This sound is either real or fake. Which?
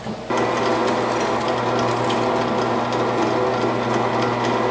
real